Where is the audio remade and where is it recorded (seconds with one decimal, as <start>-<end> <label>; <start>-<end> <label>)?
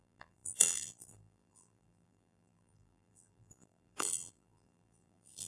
0.0-5.5 remade